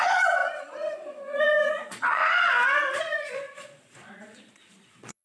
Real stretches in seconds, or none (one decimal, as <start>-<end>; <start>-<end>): 2.2-3.0